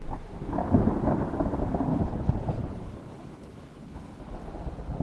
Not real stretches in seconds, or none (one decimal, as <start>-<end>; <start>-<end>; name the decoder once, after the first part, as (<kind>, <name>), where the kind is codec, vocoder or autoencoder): 1.9-4.2 (codec, HILCodec)